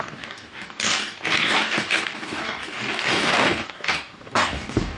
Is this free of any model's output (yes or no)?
no